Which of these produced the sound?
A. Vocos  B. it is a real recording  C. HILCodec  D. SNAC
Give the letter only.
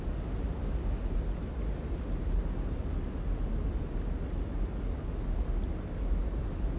B